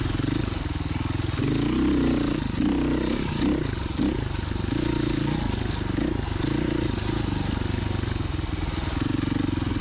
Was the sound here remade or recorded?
recorded